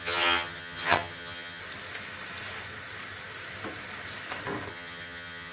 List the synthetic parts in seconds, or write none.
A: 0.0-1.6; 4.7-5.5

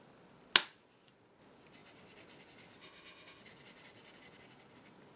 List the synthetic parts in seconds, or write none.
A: 2.8-3.4

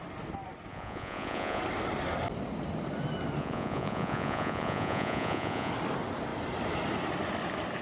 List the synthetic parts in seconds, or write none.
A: 0.7-1.6; 3.4-5.7

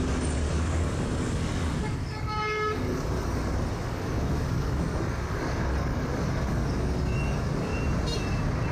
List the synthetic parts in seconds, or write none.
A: 0.0-7.7

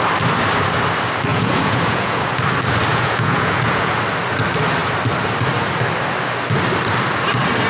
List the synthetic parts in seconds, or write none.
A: 1.3-2.4; 2.9-3.9